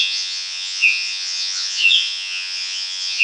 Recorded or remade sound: remade